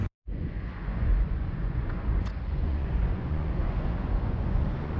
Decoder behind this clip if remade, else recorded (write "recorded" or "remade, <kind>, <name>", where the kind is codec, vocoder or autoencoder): remade, vocoder, Vocos